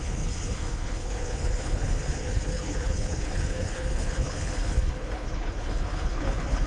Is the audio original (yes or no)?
no